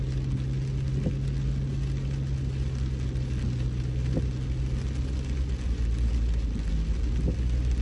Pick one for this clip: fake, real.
real